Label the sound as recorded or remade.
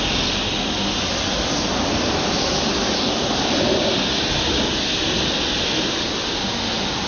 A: recorded